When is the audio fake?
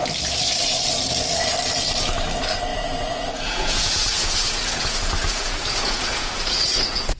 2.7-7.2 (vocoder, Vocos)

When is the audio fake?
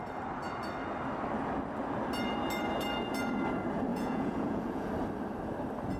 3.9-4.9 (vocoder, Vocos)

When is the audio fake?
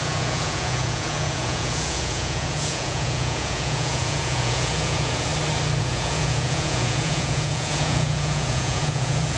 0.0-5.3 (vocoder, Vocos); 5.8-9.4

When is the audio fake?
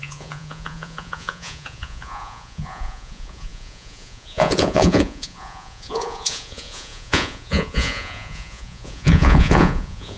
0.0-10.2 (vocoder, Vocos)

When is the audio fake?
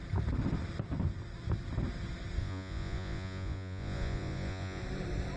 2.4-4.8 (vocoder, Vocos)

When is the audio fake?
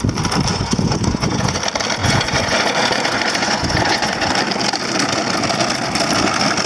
0.5-1.6 (vocoder, Vocos); 2.0-4.3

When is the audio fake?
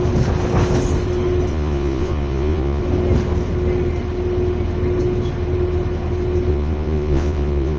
1.5-2.8 (vocoder, Vocos); 6.5-7.8